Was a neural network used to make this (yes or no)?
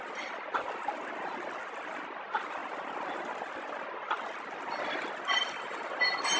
no